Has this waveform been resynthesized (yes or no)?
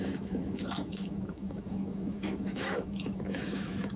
yes